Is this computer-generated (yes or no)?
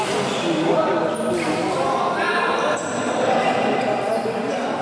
no